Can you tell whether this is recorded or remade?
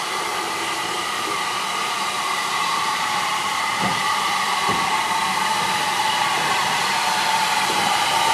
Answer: remade